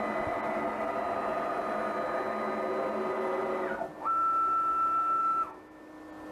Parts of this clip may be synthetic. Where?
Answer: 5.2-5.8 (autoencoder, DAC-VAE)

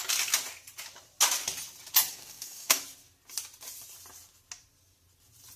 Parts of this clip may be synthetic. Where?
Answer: 2.1-2.8 (codec, DAC)

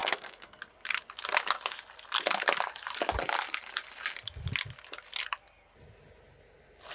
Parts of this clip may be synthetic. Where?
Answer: 0.0-0.6 (codec, SNAC)

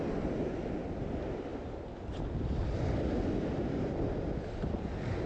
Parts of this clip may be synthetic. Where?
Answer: none

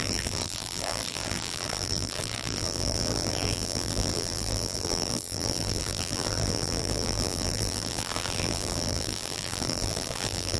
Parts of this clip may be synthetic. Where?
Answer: 0.0-10.6 (vocoder, BigVGAN v2)

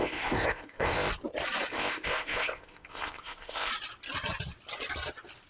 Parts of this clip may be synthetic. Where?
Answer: 0.0-1.1 (codec, ZipCodec); 1.7-3.7